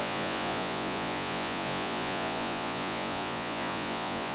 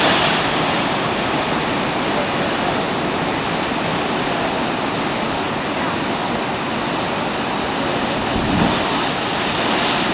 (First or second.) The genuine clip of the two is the second